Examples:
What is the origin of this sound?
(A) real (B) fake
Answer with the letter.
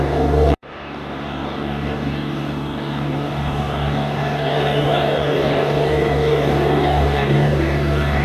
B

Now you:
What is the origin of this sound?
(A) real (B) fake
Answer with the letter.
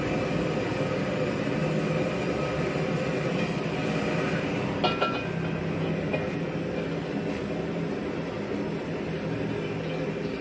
A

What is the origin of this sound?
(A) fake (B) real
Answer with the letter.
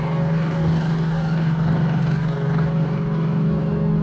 A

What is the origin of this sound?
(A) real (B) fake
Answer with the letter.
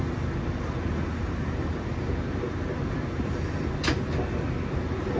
A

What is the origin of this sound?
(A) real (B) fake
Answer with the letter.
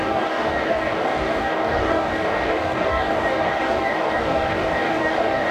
B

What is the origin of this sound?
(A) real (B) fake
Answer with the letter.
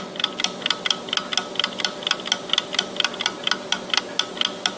A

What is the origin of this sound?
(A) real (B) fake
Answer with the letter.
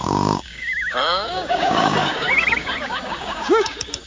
B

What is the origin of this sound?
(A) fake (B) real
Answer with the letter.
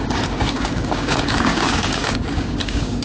A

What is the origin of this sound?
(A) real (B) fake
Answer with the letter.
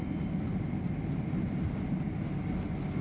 A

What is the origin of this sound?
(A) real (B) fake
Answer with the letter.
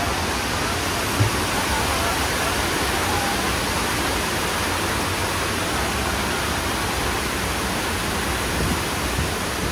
A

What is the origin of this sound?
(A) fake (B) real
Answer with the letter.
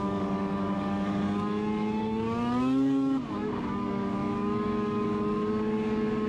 A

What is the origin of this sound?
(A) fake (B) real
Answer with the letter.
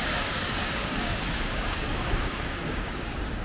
A